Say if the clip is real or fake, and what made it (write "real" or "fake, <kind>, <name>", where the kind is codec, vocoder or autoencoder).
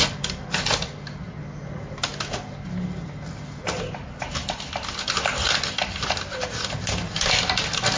real